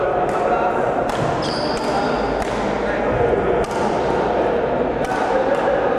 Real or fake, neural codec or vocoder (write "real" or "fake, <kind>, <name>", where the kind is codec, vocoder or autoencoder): real